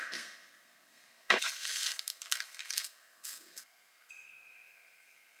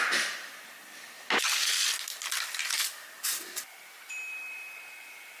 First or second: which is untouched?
second